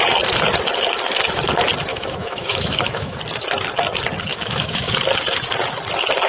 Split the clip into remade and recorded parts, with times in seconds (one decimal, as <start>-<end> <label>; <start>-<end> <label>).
0.0-1.9 recorded; 1.9-3.2 remade; 3.2-4.3 recorded; 4.3-4.9 remade; 4.9-6.3 recorded